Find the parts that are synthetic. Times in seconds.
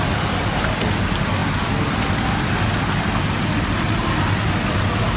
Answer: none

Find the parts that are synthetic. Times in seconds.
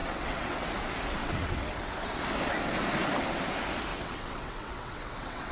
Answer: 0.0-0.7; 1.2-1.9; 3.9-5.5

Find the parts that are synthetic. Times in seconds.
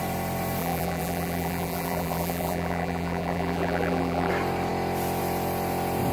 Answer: 0.6-4.3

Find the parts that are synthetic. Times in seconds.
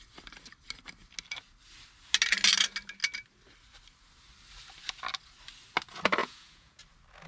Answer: 6.2-6.8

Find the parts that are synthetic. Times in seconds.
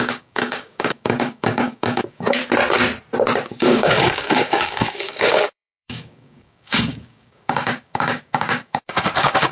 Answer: 0.0-2.4; 3.6-9.5